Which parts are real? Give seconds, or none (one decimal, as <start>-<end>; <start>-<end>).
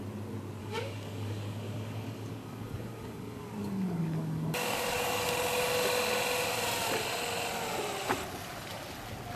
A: 0.0-0.6; 5.3-9.4